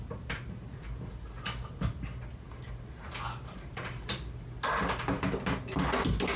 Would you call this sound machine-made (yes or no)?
no